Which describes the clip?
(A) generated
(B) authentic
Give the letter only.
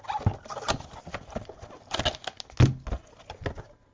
B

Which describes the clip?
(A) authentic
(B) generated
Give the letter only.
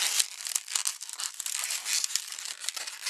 A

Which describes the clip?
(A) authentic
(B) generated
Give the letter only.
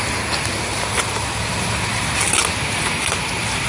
A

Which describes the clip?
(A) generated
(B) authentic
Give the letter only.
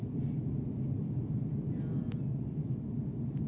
B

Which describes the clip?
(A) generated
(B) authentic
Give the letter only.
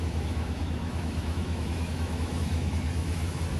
A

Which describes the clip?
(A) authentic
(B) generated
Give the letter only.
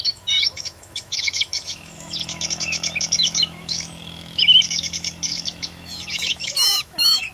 B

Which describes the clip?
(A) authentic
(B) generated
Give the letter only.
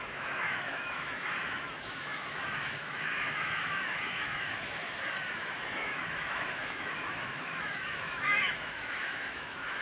B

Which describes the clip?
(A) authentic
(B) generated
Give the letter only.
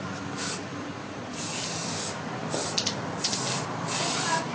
A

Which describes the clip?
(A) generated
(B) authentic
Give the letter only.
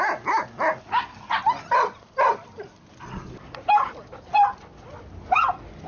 B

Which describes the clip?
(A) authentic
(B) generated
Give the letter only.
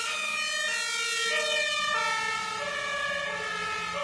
A